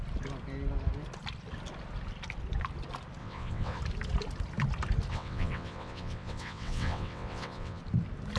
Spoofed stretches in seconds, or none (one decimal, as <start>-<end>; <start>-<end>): 3.2-3.8; 5.1-7.8